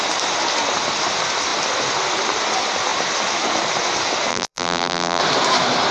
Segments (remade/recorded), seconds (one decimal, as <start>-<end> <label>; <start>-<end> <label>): 0.0-4.3 recorded; 4.3-5.2 remade; 5.2-5.9 recorded